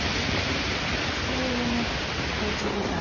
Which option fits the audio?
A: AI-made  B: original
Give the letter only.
B